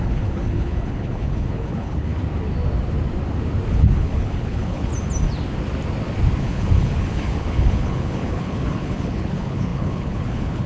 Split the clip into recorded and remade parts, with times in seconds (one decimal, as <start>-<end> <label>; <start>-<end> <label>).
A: 0.0-2.1 remade; 2.1-3.7 recorded; 3.7-4.9 remade; 4.9-6.4 recorded; 6.4-10.7 remade